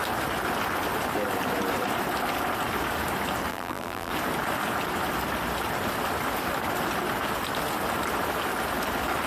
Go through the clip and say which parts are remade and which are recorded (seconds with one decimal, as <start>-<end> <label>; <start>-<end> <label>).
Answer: 0.0-3.5 recorded; 3.5-4.1 remade; 4.1-9.3 recorded